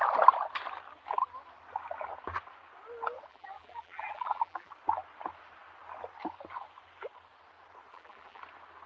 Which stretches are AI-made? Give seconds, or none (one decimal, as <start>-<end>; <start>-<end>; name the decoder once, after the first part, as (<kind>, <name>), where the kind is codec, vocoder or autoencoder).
3.3-4.7 (vocoder, BigVGAN v2); 7.9-8.4